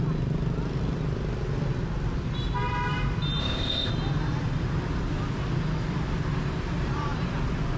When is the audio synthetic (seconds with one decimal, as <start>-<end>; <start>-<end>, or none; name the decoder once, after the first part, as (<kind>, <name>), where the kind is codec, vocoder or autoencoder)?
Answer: 3.4-3.9 (codec, ZipCodec)

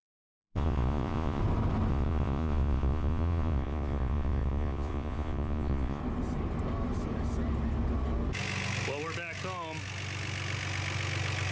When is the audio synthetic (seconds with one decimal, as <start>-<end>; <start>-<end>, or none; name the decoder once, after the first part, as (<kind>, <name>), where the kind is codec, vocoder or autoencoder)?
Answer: 0.0-1.4 (vocoder, Vocos); 1.9-6.0

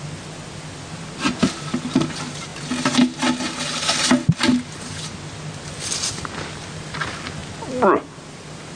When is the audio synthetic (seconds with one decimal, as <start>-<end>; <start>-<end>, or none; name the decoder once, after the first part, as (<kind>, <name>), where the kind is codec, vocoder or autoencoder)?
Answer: none

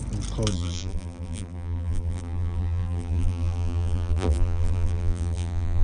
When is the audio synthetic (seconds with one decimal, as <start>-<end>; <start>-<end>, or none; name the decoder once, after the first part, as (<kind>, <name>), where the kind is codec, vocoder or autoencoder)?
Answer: 0.5-5.8 (vocoder, BigVGAN v2)

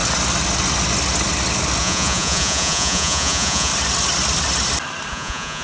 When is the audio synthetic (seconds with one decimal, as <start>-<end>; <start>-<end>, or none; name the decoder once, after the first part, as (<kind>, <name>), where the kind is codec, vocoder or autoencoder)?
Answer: 1.8-3.7 (vocoder, Vocos); 5.1-5.6

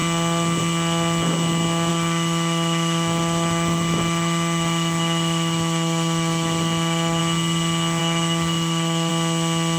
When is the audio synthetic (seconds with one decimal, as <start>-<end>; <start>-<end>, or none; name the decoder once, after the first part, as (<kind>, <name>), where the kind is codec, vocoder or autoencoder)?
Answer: 1.9-7.2 (autoencoder, DAC-VAE); 8.0-9.1